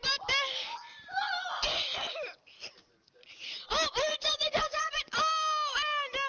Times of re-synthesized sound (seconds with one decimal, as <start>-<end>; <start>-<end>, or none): 4.1-5.1